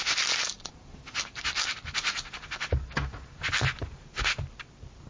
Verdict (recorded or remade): recorded